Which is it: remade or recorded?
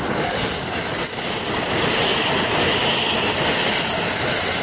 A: recorded